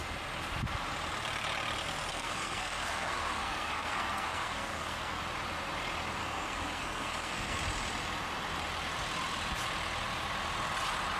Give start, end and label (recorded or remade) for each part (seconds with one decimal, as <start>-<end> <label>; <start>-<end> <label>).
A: 0.0-2.1 recorded; 2.1-5.2 remade; 5.2-6.2 recorded; 6.2-7.6 remade; 7.6-11.2 recorded